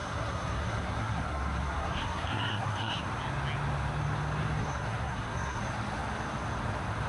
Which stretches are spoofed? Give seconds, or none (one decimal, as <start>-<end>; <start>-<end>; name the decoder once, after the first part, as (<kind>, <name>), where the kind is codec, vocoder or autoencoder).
0.0-3.1 (codec, SNAC); 4.6-5.6